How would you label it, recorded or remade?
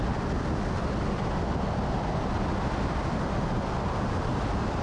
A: recorded